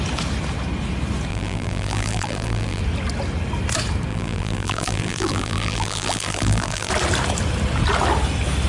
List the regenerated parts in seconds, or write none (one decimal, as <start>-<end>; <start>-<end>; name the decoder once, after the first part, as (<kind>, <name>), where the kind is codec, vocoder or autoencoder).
1.3-2.8 (vocoder, BigVGAN v2); 4.1-6.9